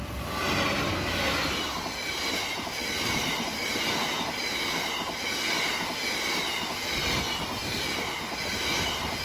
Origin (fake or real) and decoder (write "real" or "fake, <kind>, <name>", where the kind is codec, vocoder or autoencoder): real